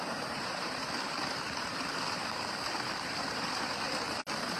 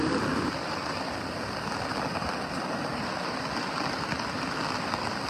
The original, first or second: second